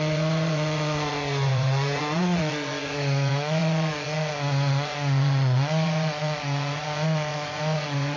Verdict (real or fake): fake